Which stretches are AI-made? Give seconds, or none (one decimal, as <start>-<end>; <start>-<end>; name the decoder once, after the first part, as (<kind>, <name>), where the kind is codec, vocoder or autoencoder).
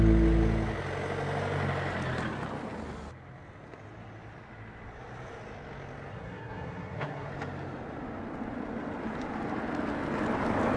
6.1-7.3 (codec, SNAC)